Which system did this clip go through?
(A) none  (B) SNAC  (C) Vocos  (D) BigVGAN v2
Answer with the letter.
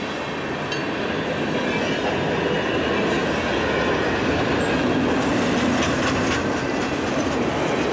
A